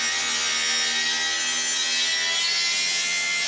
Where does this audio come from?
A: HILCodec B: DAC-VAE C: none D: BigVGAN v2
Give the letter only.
C